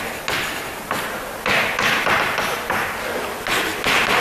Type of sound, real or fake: real